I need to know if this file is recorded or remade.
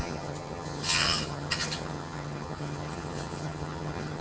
remade